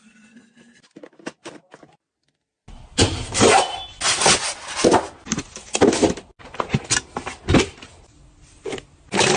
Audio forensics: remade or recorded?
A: recorded